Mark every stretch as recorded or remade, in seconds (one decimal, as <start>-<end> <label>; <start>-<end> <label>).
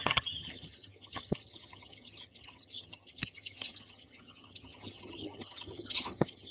0.0-6.5 remade